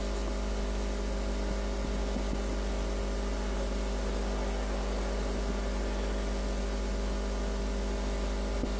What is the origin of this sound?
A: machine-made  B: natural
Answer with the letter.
B